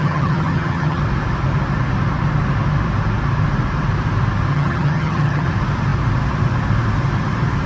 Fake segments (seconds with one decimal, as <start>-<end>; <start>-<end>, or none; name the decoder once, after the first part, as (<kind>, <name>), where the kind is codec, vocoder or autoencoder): 0.0-1.0 (vocoder, HiFi-GAN); 4.5-5.5